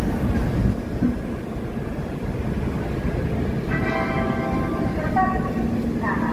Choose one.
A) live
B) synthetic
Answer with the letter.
A